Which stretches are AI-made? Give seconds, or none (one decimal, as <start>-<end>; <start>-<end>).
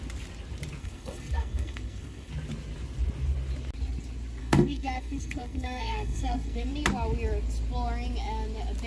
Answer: 0.8-2.3; 4.4-6.7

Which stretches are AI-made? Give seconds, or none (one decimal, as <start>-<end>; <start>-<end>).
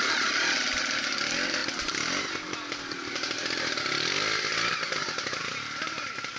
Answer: none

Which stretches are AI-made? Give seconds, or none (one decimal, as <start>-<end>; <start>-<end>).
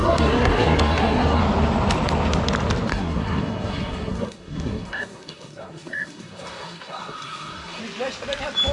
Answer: 0.0-1.4; 2.9-7.8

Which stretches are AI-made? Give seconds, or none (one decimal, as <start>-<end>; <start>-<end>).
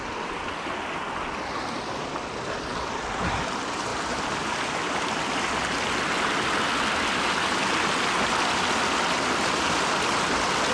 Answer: none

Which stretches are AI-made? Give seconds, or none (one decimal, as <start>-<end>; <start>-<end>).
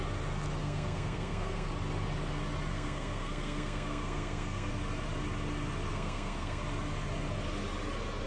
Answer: 0.6-1.7; 2.7-4.7; 5.9-6.6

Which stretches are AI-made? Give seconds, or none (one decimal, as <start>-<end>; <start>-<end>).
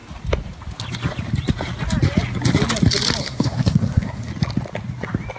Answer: 3.2-4.3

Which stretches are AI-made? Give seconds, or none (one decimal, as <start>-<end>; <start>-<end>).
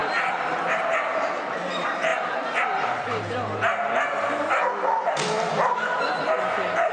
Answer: none